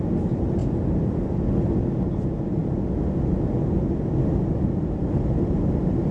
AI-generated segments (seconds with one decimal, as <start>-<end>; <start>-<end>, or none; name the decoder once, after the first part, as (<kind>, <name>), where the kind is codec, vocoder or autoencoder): none

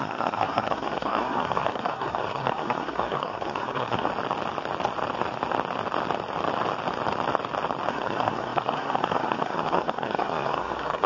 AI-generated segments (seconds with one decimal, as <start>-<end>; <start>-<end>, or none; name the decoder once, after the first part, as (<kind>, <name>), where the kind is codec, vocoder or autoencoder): 0.0-4.1 (codec, SNAC); 7.9-11.1